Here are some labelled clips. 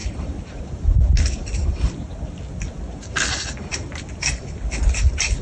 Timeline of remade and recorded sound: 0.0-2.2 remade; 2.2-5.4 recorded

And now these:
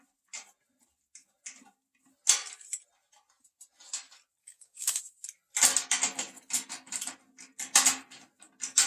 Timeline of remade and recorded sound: 0.0-4.4 recorded; 4.4-5.0 remade; 5.0-8.9 recorded